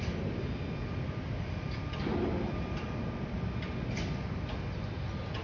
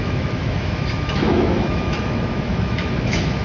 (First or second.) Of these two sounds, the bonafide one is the first